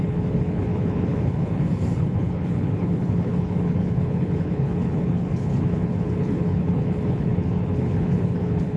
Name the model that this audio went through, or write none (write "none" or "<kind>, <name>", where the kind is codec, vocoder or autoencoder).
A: codec, HILCodec